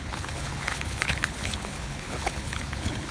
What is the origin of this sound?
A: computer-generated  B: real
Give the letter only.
A